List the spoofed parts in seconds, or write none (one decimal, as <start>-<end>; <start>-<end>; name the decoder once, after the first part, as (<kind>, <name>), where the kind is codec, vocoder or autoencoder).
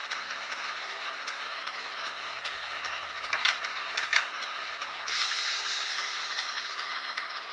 0.0-7.5 (codec, SNAC)